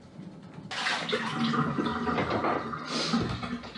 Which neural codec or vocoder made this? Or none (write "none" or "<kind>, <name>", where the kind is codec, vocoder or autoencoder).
none